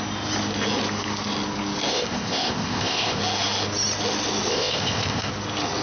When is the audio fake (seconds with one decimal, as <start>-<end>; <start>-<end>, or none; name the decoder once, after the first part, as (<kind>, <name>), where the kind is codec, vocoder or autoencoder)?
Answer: 1.9-3.2 (codec, ZipCodec); 4.5-5.3